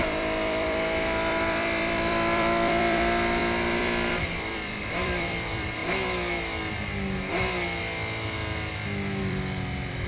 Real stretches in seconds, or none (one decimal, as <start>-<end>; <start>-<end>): 5.8-9.2